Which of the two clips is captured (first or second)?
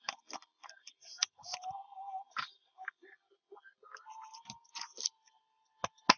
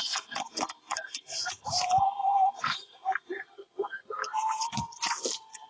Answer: first